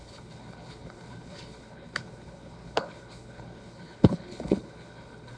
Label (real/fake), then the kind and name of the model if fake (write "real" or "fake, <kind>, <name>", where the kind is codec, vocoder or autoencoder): fake, codec, HILCodec